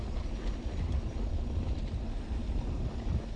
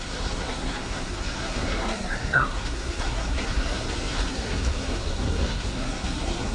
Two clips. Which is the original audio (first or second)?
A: first